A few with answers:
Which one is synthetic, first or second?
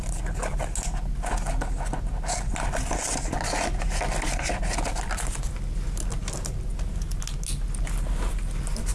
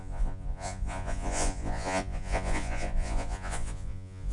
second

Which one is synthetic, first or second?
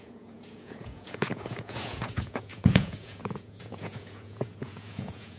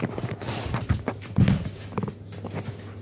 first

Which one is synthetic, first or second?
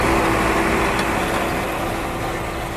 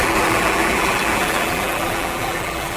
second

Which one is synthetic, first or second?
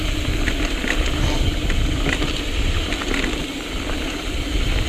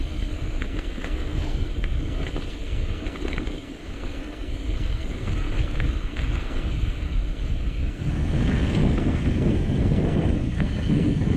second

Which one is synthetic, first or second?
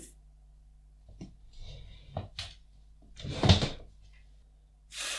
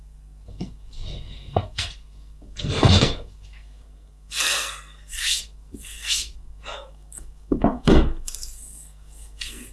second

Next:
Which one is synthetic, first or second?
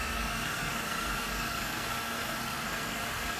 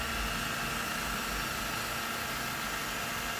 first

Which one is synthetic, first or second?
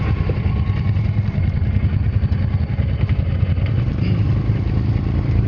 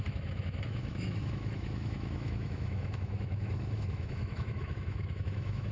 second